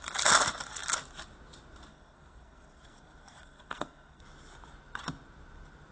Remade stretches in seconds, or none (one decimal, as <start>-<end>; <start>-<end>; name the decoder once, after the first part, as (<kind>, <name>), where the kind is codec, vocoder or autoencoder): 1.9-4.2 (codec, SNAC)